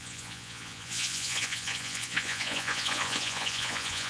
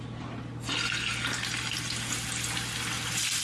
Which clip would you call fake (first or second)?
first